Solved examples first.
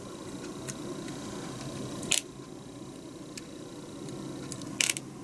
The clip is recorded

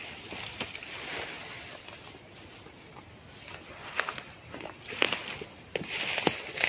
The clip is recorded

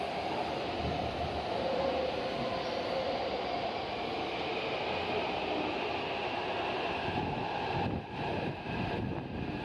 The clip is recorded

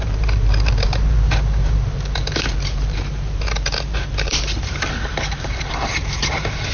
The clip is remade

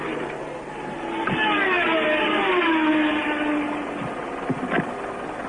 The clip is recorded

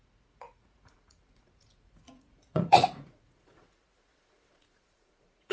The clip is remade